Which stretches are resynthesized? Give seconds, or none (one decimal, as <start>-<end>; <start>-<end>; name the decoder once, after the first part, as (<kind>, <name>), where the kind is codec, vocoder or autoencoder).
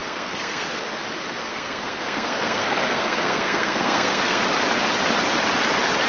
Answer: 0.0-0.7 (codec, SNAC); 1.4-4.4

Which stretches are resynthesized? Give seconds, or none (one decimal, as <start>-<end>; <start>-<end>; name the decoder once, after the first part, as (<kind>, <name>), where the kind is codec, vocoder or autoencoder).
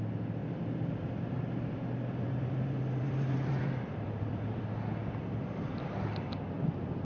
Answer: 0.4-4.6 (vocoder, BigVGAN v2); 5.0-6.6